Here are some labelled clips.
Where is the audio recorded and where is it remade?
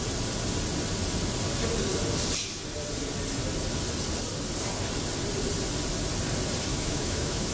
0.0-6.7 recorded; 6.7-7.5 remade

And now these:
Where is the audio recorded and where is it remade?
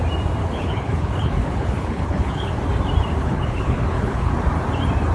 0.0-0.4 recorded; 0.4-2.5 remade; 2.5-3.2 recorded; 3.2-4.3 remade; 4.3-5.1 recorded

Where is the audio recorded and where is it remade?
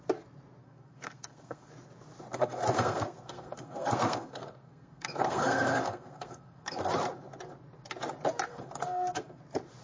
0.0-0.6 recorded; 0.6-1.7 remade; 1.7-2.3 recorded; 2.3-6.9 remade; 6.9-8.5 recorded; 8.5-9.4 remade; 9.4-9.8 recorded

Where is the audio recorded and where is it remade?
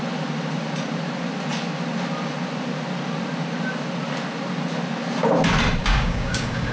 0.0-5.8 recorded; 5.8-6.7 remade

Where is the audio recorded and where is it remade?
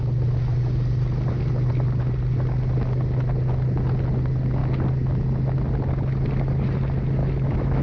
0.0-7.2 recorded; 7.2-7.8 remade